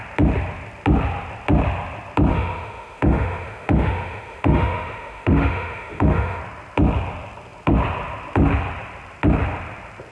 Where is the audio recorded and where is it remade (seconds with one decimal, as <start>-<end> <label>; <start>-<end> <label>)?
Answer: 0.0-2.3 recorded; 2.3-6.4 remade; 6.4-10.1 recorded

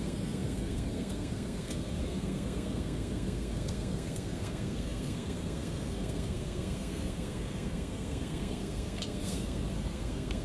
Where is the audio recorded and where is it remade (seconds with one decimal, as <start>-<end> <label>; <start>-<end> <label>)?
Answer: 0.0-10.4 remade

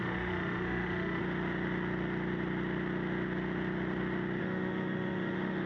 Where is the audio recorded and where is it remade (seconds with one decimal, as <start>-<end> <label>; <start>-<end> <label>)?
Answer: 0.0-1.2 remade; 1.2-4.4 recorded; 4.4-5.7 remade

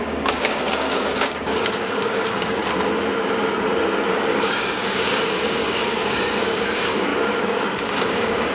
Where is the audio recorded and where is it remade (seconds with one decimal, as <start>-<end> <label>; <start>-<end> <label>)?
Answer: 0.0-2.6 remade; 2.6-4.1 recorded; 4.1-8.5 remade